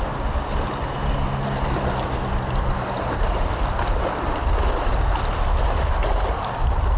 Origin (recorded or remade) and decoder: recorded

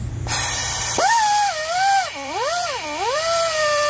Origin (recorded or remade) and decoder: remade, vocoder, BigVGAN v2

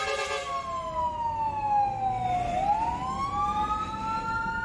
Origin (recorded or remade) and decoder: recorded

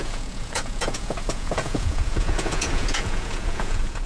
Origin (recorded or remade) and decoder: remade, vocoder, Vocos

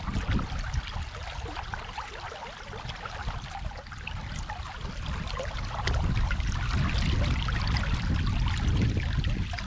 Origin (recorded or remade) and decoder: recorded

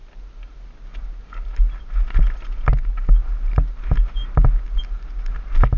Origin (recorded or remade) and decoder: recorded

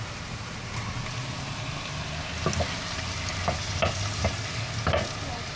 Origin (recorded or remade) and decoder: recorded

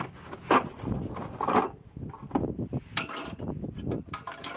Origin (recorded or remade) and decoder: recorded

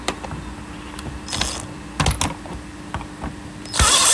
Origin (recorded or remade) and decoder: recorded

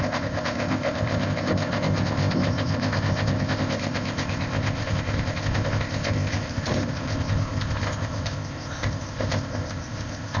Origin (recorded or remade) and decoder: remade, codec, ZipCodec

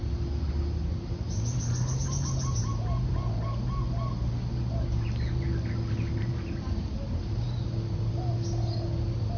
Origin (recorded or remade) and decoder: recorded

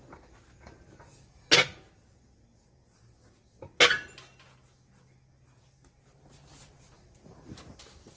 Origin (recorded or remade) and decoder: recorded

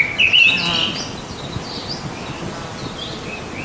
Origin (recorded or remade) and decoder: recorded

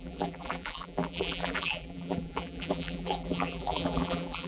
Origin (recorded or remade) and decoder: remade, vocoder, BigVGAN v2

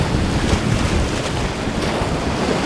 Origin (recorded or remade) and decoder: recorded